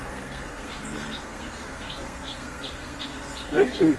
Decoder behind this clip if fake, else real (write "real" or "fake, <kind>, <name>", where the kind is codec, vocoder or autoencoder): fake, codec, SNAC